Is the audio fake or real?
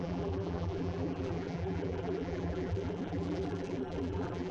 fake